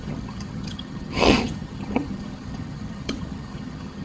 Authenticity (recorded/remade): remade